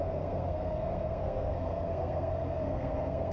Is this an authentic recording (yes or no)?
no